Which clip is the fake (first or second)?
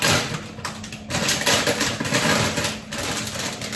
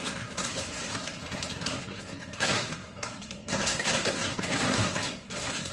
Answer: second